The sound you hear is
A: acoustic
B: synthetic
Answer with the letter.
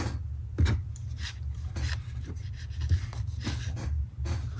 A